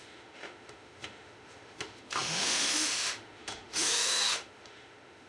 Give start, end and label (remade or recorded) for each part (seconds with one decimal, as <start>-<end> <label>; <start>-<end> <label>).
0.0-5.3 remade